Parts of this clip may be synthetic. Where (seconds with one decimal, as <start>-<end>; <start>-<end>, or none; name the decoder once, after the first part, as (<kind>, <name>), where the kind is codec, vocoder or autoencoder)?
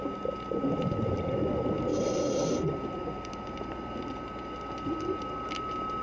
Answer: none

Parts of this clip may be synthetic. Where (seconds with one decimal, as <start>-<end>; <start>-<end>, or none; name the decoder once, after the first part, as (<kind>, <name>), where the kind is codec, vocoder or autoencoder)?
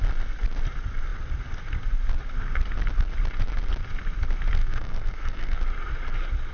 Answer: 4.6-5.6 (codec, SNAC)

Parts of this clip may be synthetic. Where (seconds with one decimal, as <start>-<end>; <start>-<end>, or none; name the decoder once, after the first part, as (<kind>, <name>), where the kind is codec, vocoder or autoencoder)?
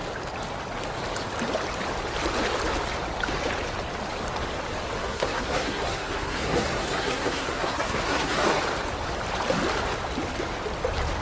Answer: 5.0-8.6 (codec, SNAC)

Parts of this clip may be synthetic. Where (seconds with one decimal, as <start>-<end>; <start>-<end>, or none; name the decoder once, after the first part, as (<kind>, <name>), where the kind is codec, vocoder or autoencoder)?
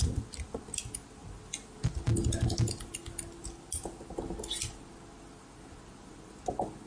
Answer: none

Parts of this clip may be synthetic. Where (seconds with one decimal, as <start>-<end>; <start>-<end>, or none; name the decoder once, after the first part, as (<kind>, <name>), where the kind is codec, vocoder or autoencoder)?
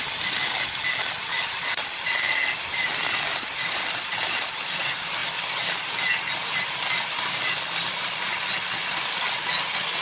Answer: none